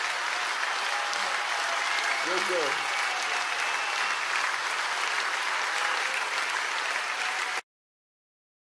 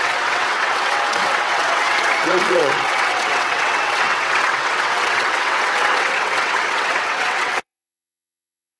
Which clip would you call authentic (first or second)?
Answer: first